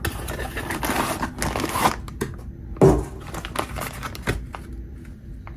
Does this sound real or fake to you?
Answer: real